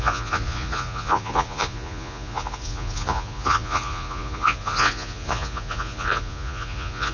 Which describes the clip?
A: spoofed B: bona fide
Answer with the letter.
A